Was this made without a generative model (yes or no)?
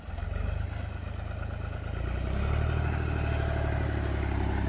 yes